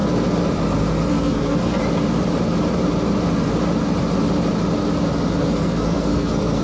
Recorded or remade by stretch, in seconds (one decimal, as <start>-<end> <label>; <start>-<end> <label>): 0.0-1.1 recorded; 1.1-1.8 remade; 1.8-5.4 recorded; 5.4-6.6 remade

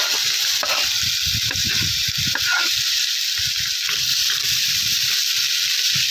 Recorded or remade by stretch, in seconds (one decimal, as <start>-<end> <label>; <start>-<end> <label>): 0.0-1.6 recorded; 1.6-3.1 remade; 3.1-4.1 recorded; 4.1-4.7 remade; 4.7-5.4 recorded; 5.4-6.1 remade

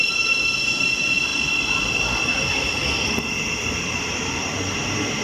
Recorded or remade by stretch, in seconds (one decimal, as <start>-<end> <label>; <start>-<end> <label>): 0.0-1.3 recorded; 1.3-2.3 remade; 2.3-5.2 recorded

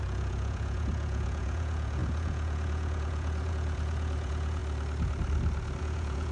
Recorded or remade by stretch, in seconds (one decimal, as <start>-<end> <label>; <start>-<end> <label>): 0.0-4.6 remade; 4.6-5.8 recorded; 5.8-6.3 remade

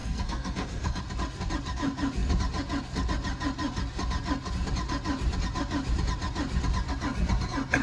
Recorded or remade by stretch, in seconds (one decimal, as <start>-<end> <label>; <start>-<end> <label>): 0.0-1.0 remade; 1.0-7.8 recorded

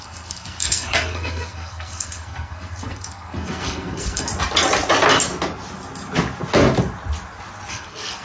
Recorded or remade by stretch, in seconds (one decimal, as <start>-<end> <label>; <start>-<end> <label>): 0.0-4.3 remade; 4.3-7.7 recorded; 7.7-8.2 remade